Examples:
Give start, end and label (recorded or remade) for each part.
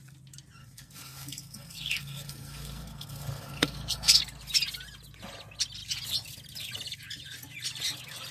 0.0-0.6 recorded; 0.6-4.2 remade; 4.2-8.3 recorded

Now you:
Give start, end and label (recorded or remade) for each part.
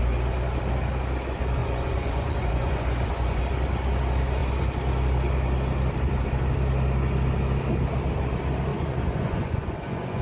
0.0-1.6 recorded; 1.6-3.4 remade; 3.4-8.7 recorded; 8.7-10.2 remade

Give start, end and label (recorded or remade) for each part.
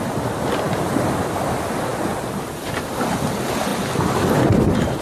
0.0-5.0 recorded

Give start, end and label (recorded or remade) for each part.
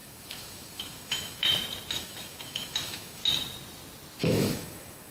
0.0-1.4 remade; 1.4-1.9 recorded; 1.9-3.2 remade; 3.2-4.2 recorded; 4.2-5.1 remade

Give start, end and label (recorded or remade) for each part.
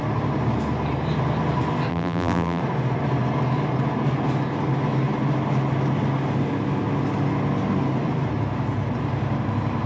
0.0-1.9 recorded; 1.9-2.6 remade; 2.6-9.9 recorded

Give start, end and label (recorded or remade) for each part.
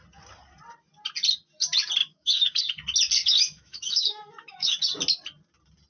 0.0-2.0 recorded; 2.0-2.6 remade; 2.6-3.2 recorded; 3.2-4.9 remade; 4.9-5.9 recorded